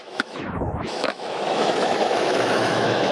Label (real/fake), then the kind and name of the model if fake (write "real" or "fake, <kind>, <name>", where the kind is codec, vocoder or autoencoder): fake, autoencoder, DAC-VAE